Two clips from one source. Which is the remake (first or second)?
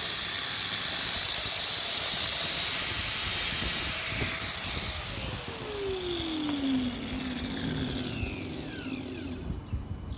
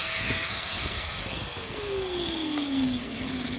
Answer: second